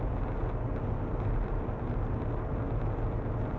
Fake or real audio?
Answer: real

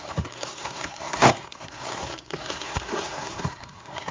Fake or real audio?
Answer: fake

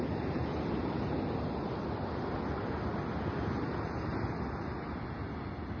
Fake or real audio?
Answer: real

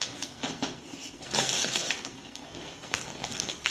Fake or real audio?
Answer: fake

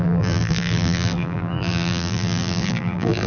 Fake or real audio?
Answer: fake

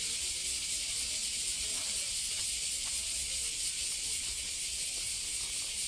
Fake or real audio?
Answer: real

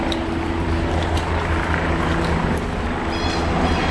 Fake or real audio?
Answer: real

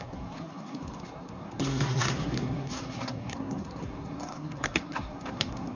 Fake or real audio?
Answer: fake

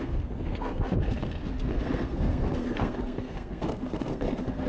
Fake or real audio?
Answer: fake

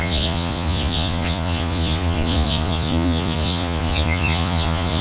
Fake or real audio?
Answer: fake